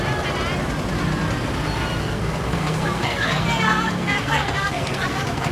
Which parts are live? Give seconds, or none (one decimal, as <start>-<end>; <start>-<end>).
0.0-2.0